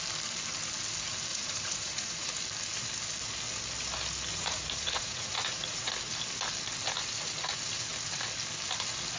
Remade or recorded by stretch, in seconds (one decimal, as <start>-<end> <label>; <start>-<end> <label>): 0.0-1.3 recorded; 1.3-2.3 remade; 2.3-4.3 recorded; 4.3-5.9 remade; 5.9-9.2 recorded